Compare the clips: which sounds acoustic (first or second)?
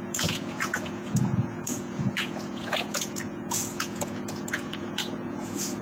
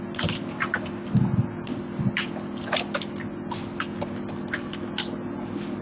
second